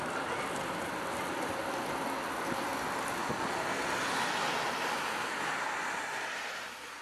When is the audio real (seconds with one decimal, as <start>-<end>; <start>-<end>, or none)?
0.0-7.0

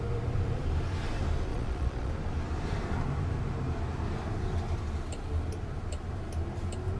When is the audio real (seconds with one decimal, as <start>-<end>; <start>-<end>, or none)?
0.0-1.5; 2.1-7.0

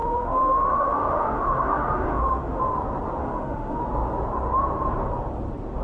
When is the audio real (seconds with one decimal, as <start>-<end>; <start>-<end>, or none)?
2.6-3.2; 3.8-5.8

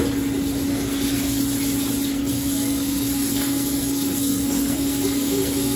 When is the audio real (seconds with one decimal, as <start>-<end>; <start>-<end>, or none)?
0.0-0.7; 1.4-2.1

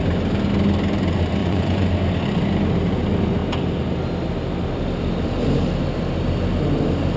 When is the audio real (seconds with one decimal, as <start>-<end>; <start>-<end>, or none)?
0.0-1.4; 1.9-7.2

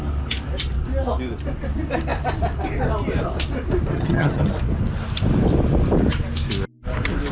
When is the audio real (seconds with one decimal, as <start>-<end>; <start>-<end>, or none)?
0.0-3.9; 4.5-7.3